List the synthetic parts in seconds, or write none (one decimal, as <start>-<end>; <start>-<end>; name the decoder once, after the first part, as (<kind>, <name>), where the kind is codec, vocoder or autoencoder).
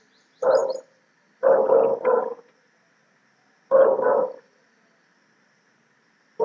0.6-1.3 (vocoder, BigVGAN v2)